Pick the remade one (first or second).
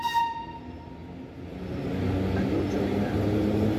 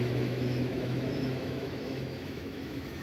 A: second